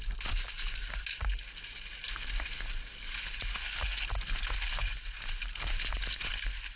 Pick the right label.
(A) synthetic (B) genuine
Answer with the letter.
B